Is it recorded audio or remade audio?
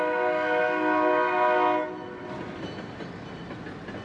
recorded